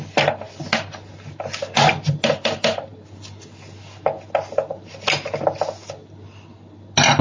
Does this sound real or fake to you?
real